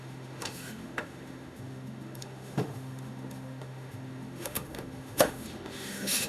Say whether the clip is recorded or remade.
remade